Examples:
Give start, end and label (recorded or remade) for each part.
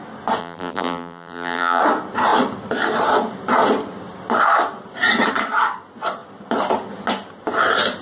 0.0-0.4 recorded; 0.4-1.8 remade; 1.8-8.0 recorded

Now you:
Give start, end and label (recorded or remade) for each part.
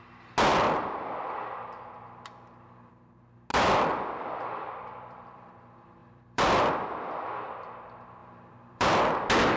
0.0-0.5 recorded; 0.5-1.1 remade; 1.1-3.5 recorded; 3.5-5.5 remade; 5.5-6.0 recorded; 6.0-6.7 remade; 6.7-8.2 recorded; 8.2-9.0 remade; 9.0-9.6 recorded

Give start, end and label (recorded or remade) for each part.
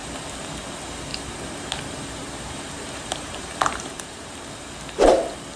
0.0-1.1 recorded; 1.1-4.5 remade; 4.5-5.6 recorded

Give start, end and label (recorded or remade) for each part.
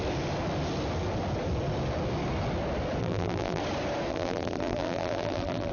0.0-3.0 recorded; 3.0-3.6 remade; 3.6-4.1 recorded; 4.1-5.7 remade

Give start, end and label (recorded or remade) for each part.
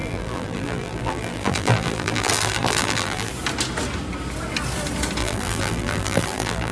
0.0-3.3 remade; 3.3-5.2 recorded; 5.2-6.7 remade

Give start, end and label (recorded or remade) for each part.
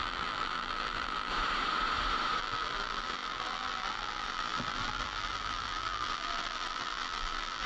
0.0-1.3 remade; 1.3-2.4 recorded; 2.4-7.7 remade